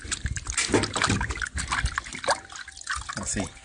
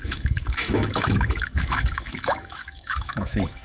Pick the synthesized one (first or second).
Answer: second